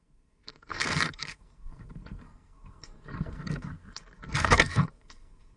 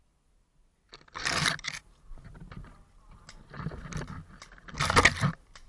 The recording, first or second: second